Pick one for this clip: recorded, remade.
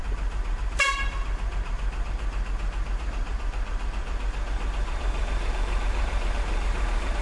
remade